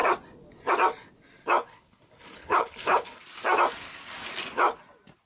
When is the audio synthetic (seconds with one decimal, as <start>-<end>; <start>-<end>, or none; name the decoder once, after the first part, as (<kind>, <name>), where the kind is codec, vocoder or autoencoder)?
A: 1.7-3.2 (codec, HILCodec)